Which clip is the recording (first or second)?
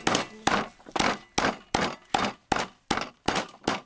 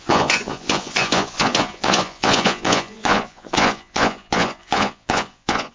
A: first